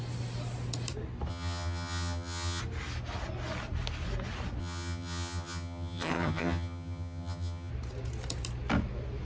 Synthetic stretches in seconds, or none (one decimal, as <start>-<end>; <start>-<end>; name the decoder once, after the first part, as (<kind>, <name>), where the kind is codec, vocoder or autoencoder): 1.3-2.6 (vocoder, HiFi-GAN); 4.6-7.7